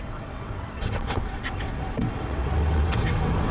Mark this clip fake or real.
fake